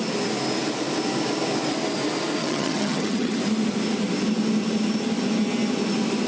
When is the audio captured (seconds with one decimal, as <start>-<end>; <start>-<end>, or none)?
0.0-2.4; 3.4-6.3